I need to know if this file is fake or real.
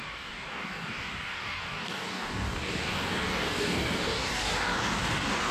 fake